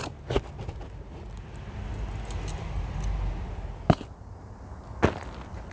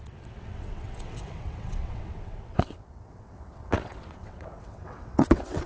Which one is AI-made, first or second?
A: second